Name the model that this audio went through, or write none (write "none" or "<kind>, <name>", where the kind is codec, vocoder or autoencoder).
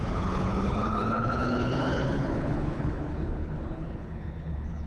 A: codec, HILCodec